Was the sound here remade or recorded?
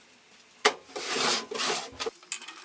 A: recorded